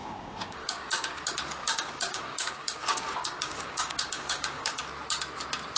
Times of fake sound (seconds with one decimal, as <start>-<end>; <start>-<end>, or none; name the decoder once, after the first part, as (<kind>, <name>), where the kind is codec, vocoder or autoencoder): 0.0-1.2 (codec, DAC); 1.6-4.8